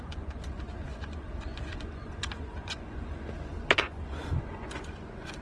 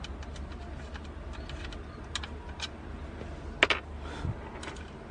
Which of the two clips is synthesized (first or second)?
first